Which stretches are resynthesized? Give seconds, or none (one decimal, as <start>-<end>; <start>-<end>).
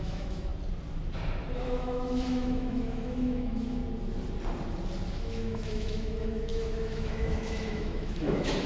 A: 0.0-0.5; 1.6-3.8; 5.1-8.7